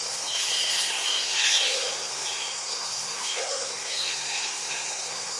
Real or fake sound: fake